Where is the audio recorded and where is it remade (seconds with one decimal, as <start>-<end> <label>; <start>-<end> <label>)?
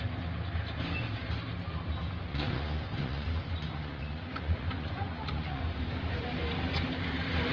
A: 0.0-2.3 recorded; 2.3-5.6 remade; 5.6-7.5 recorded